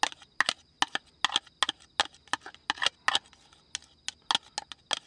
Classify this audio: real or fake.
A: real